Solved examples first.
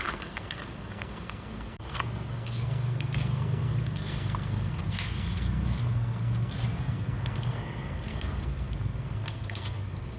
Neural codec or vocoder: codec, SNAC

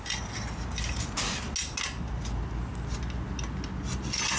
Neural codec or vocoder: none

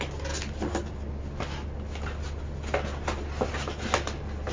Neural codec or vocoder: none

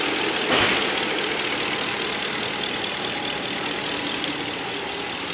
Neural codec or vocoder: none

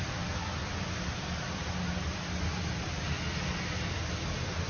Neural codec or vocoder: none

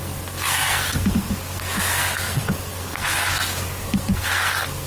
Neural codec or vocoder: codec, SNAC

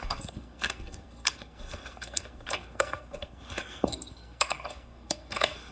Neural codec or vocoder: codec, SNAC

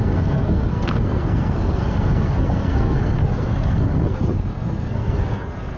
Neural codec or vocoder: codec, SNAC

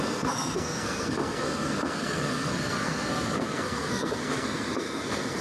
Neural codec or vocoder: codec, SNAC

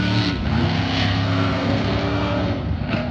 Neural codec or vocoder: codec, SNAC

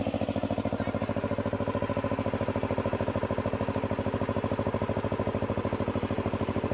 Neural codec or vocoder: none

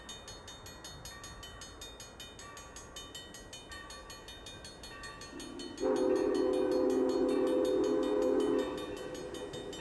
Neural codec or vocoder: none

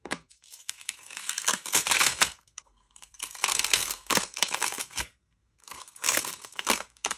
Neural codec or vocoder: codec, SNAC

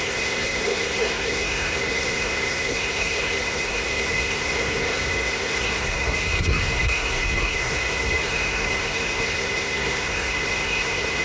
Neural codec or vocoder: codec, SNAC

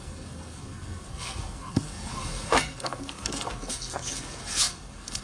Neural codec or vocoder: codec, SNAC